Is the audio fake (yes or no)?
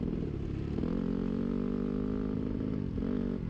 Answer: no